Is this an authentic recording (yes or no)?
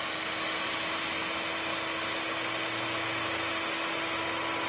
yes